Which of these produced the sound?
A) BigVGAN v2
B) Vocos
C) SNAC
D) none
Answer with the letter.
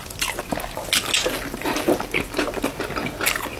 D